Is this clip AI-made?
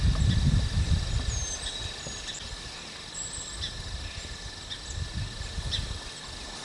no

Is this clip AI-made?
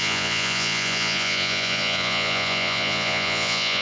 yes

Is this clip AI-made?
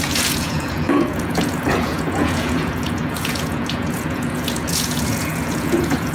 yes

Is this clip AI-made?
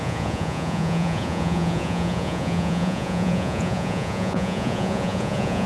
yes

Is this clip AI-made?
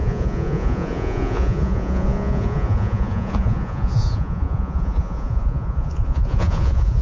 yes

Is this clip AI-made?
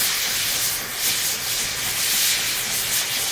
no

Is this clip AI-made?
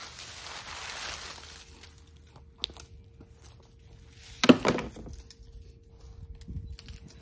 no